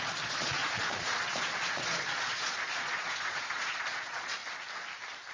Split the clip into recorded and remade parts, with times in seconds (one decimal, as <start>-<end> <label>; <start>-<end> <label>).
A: 0.0-4.4 remade; 4.4-5.3 recorded